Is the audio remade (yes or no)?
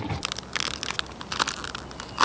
no